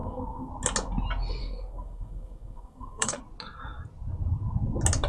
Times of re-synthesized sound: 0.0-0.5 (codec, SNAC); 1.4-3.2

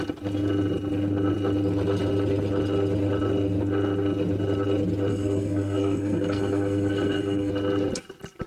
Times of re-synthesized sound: 5.1-7.5 (codec, SNAC)

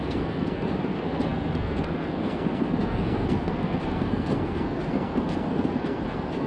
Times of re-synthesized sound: 0.0-6.5 (codec, SNAC)

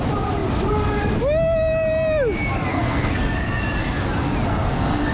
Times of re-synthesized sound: 2.7-3.6 (codec, SNAC); 4.5-5.1

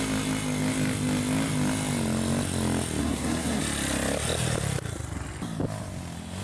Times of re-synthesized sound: 3.0-3.6 (codec, SNAC)